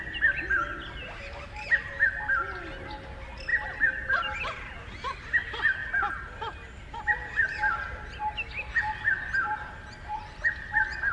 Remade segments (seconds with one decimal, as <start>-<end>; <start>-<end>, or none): none

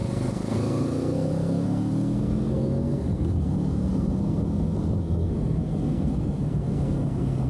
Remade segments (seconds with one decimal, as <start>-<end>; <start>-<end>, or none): 0.0-7.5

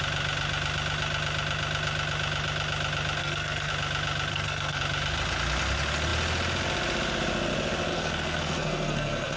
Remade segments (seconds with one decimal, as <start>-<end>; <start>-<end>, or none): 3.2-3.7; 4.3-4.8; 7.9-9.4

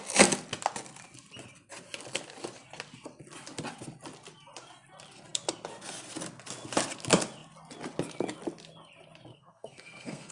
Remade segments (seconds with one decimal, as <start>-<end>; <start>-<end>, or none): 9.3-10.3

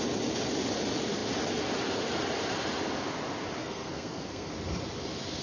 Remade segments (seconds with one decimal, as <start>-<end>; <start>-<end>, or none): 3.6-4.5